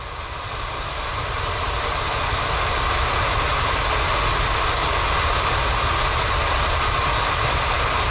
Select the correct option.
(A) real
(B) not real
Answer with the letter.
A